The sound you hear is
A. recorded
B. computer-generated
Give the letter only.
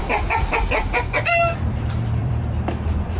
B